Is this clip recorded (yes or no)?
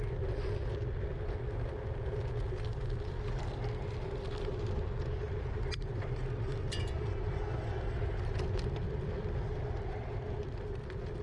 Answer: yes